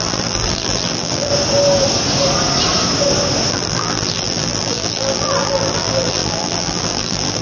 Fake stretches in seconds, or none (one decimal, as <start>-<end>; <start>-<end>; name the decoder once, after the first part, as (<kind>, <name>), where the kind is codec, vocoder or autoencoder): 0.0-1.3 (vocoder, BigVGAN v2); 3.5-7.4